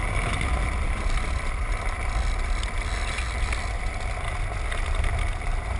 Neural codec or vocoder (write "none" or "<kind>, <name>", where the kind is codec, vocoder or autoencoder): none